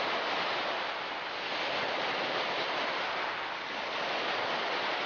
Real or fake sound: real